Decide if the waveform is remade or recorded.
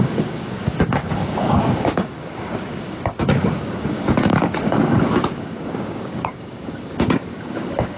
remade